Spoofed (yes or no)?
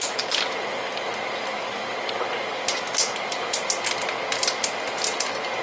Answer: no